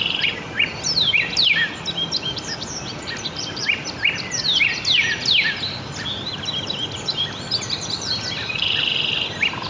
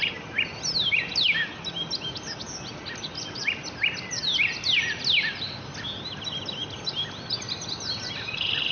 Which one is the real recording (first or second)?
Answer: second